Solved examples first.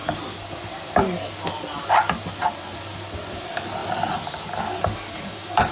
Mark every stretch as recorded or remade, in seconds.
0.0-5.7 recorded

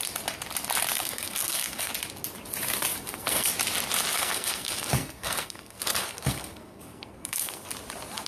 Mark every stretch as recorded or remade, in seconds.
0.0-0.9 recorded; 0.9-1.9 remade; 1.9-2.9 recorded; 2.9-3.5 remade; 3.5-4.1 recorded; 4.1-7.7 remade; 7.7-8.3 recorded

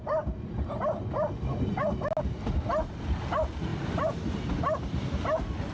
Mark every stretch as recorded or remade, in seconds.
0.0-5.7 recorded

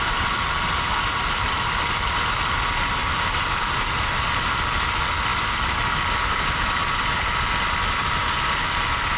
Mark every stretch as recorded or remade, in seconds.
0.0-9.2 recorded